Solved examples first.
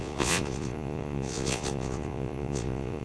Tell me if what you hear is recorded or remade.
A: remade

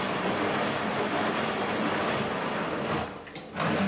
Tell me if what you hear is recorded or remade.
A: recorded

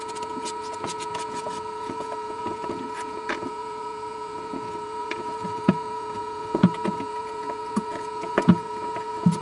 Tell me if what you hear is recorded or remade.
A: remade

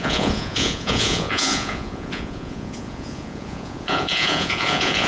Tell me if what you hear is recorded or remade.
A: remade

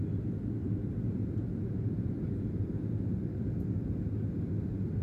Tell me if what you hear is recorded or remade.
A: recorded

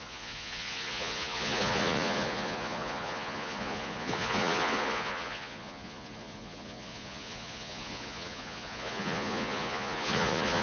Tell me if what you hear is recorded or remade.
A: remade